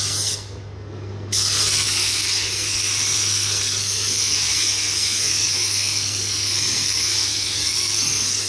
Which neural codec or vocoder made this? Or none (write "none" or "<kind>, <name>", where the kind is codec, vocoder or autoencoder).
codec, SNAC